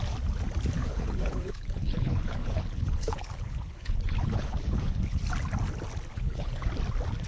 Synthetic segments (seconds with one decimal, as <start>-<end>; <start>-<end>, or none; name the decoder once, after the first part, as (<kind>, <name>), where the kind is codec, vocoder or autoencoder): 0.8-5.2 (codec, HILCodec); 6.1-6.7